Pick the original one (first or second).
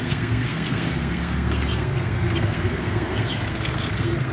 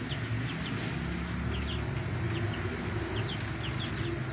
second